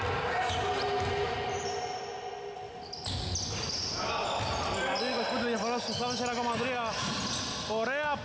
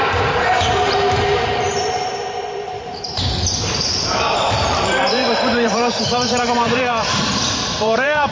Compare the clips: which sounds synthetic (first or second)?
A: second